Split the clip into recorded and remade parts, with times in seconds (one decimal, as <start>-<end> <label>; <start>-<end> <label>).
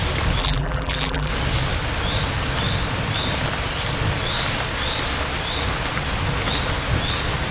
0.0-0.4 recorded; 0.4-1.3 remade; 1.3-7.5 recorded